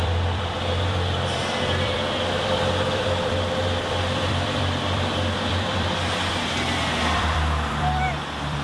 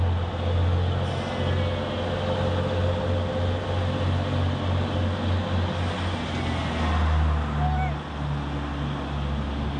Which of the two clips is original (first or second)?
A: second